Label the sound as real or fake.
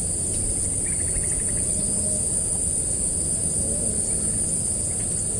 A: real